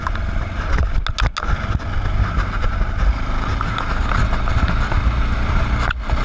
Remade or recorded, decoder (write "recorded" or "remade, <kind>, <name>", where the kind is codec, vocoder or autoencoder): recorded